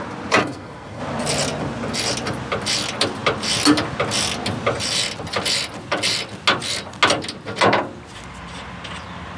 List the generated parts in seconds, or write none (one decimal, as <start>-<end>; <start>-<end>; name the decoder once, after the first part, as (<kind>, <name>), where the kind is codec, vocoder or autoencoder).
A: 0.4-1.0 (codec, SNAC)